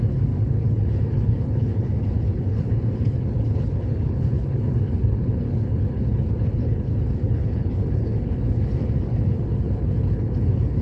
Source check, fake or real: fake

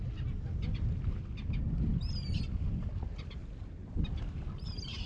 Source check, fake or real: real